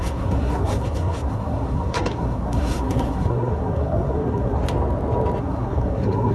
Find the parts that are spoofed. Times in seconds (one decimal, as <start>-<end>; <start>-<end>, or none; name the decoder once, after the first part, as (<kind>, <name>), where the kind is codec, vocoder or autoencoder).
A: 0.0-4.6 (codec, SNAC); 5.4-6.3